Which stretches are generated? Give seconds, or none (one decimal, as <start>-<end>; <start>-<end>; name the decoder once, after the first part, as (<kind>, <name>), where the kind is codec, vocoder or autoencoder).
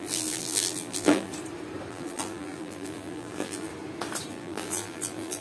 0.0-1.3 (vocoder, BigVGAN v2); 1.9-3.7; 4.3-5.4